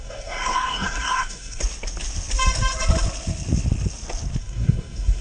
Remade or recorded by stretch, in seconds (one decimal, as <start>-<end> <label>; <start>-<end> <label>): 0.0-1.6 remade; 1.6-4.4 recorded; 4.4-5.2 remade

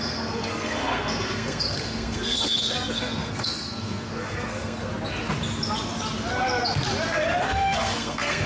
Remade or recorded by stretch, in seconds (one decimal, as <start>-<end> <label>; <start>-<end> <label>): 0.0-4.9 remade; 4.9-7.4 recorded; 7.4-8.5 remade

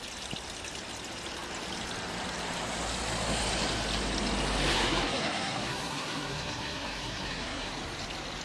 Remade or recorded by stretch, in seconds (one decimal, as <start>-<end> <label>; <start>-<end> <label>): 0.0-4.7 recorded; 4.7-7.7 remade; 7.7-8.4 recorded

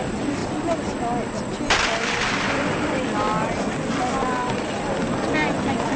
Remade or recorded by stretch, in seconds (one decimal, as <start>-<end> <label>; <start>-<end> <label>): 0.0-6.0 recorded

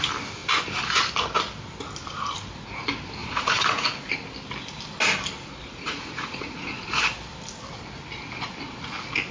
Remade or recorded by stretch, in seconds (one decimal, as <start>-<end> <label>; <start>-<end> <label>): 0.0-3.2 recorded; 3.2-4.1 remade; 4.1-5.7 recorded; 5.7-6.9 remade; 6.9-9.3 recorded

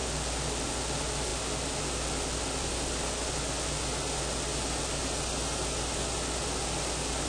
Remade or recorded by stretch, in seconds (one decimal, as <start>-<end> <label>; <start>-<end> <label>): 0.0-7.3 recorded

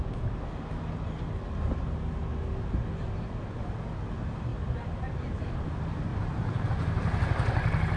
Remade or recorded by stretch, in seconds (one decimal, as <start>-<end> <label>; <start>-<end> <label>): 0.0-4.5 recorded; 4.5-5.4 remade; 5.4-6.1 recorded; 6.1-6.7 remade; 6.7-8.0 recorded

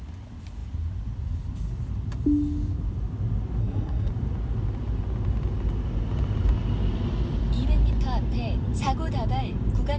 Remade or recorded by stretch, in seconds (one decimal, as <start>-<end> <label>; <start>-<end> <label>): 0.0-3.6 recorded; 3.6-4.1 remade; 4.1-10.0 recorded